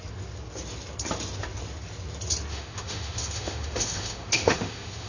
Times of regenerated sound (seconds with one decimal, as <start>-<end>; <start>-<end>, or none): 2.5-5.1